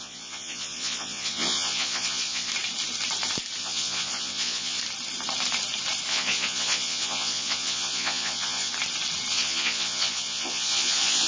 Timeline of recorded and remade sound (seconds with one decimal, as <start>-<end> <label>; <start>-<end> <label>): 0.0-2.5 remade; 2.5-3.6 recorded; 3.6-4.8 remade; 4.8-6.1 recorded; 6.1-8.7 remade; 8.7-9.3 recorded; 9.3-11.3 remade